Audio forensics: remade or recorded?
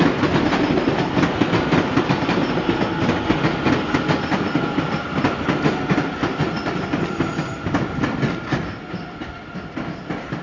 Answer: recorded